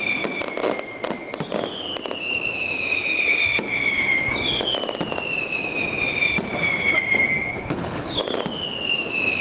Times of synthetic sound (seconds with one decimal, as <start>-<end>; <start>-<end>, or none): 7.5-8.2